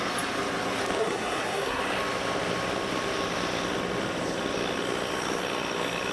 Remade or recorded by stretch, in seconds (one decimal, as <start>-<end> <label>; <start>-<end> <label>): 0.0-1.0 recorded; 1.0-1.8 remade; 1.8-6.1 recorded